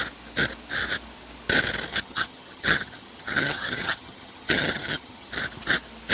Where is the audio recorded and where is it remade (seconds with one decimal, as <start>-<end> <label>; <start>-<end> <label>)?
0.0-1.9 recorded; 1.9-5.3 remade; 5.3-6.1 recorded